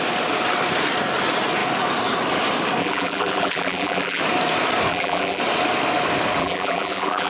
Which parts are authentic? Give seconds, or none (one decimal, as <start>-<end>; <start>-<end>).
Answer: 0.0-2.8; 4.2-4.9; 5.4-6.4

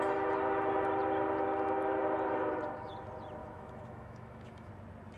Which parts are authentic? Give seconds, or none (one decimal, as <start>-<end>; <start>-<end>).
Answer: 0.0-3.4; 4.7-5.2

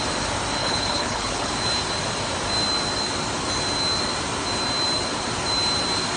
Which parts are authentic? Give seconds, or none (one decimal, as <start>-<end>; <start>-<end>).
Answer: 0.0-0.6; 1.5-6.2

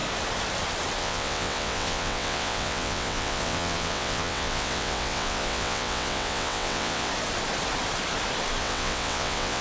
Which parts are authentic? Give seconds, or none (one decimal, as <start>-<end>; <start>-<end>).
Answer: 0.0-1.0; 7.1-8.6

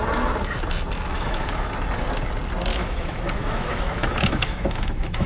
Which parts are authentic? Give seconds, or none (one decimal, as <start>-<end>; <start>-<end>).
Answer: 0.0-1.1; 1.7-2.7

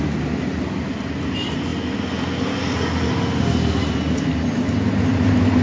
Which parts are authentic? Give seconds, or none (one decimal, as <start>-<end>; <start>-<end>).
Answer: 0.0-5.6

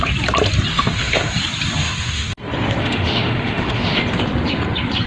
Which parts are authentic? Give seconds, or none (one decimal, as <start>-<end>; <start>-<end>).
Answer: 0.0-0.7; 1.3-1.8; 2.4-2.8; 4.0-5.1

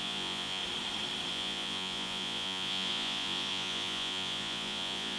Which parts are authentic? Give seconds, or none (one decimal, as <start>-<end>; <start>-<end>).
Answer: 0.6-1.3